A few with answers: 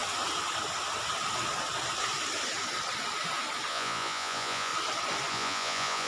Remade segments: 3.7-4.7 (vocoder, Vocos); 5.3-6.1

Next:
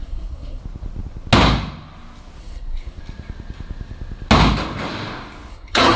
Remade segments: 0.0-0.6 (codec, SNAC); 2.4-3.0; 5.5-6.0